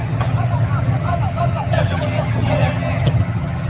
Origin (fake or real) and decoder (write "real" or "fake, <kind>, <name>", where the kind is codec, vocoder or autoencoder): fake, vocoder, HiFi-GAN